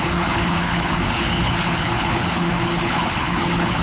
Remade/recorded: remade